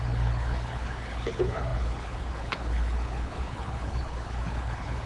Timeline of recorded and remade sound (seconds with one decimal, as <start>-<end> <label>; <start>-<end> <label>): 0.0-5.1 remade